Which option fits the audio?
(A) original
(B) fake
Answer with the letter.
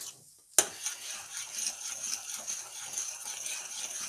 A